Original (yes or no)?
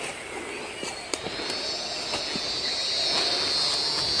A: yes